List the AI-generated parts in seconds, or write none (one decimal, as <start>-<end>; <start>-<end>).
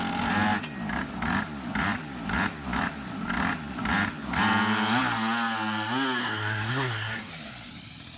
6.2-7.3